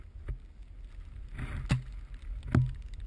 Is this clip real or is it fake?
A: real